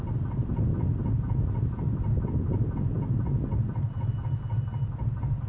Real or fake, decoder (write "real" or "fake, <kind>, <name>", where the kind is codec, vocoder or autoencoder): real